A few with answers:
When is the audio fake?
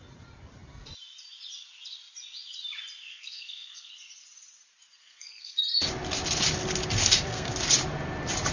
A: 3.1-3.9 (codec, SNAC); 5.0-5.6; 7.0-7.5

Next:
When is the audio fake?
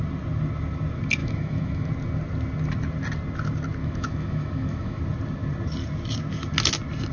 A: 1.2-1.9 (autoencoder, DAC-VAE); 3.8-5.0